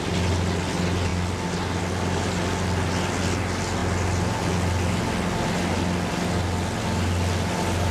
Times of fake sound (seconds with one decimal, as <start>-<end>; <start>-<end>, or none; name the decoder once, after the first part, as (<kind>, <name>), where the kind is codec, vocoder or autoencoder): none

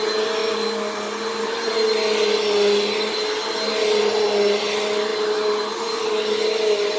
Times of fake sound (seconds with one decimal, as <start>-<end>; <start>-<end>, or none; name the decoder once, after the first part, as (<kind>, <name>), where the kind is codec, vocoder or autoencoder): none

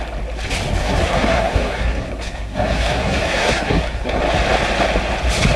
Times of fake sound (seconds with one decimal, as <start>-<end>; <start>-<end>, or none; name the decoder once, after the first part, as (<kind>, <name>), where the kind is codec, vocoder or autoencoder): 0.8-4.2 (codec, SNAC)